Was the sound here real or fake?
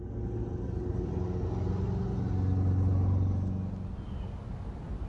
real